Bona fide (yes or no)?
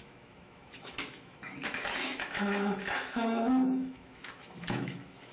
no